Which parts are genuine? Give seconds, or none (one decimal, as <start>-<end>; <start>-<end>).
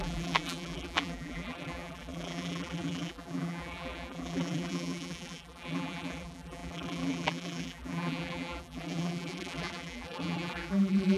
none